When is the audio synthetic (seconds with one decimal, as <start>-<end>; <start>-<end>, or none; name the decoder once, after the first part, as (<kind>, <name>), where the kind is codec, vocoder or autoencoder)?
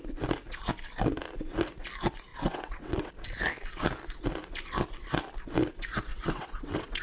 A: 2.3-3.1 (vocoder, WaveNeXt); 6.1-7.0